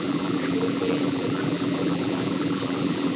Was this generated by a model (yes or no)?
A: yes